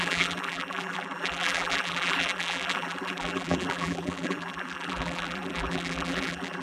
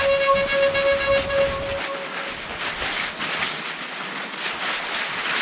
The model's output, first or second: first